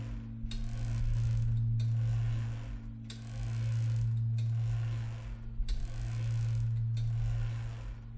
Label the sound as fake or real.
real